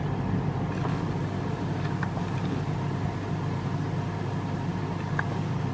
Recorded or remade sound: recorded